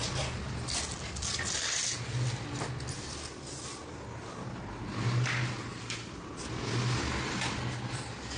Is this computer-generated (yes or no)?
no